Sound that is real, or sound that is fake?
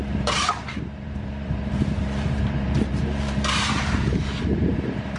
fake